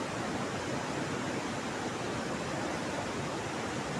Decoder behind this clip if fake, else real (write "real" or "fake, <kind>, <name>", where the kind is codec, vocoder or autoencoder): real